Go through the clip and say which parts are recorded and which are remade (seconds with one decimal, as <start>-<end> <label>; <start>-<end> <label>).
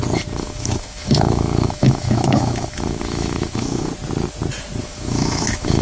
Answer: 0.0-0.4 recorded; 0.4-3.9 remade; 3.9-4.8 recorded; 4.8-5.8 remade